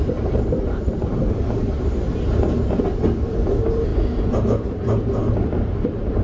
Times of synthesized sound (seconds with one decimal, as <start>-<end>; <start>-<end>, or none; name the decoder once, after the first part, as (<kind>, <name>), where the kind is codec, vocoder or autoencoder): 0.0-3.9 (vocoder, BigVGAN v2); 5.5-6.2